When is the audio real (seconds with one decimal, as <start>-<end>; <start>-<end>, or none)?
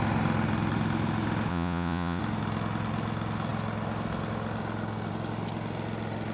0.0-1.5; 2.2-6.3